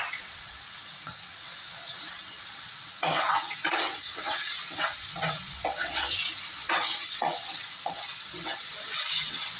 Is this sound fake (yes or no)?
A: yes